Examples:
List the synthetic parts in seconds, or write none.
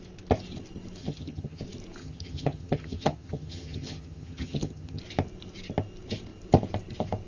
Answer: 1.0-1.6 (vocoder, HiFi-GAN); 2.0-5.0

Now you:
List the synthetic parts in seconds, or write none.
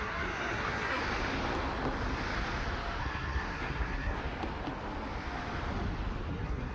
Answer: 0.0-1.0 (codec, SNAC); 3.0-4.2; 6.3-6.7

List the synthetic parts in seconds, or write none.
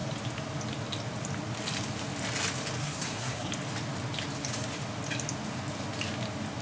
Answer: 2.8-3.5 (codec, SNAC)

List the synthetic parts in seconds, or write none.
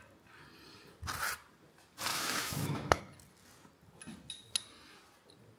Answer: 2.1-3.0 (autoencoder, DAC-VAE)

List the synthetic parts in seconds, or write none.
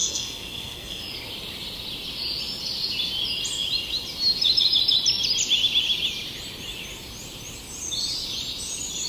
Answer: 0.0-1.0 (codec, SNAC)